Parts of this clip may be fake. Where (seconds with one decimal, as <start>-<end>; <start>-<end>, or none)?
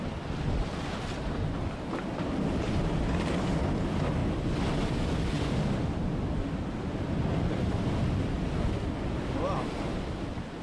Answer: none